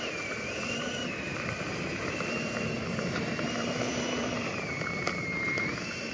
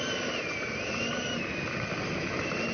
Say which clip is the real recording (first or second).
second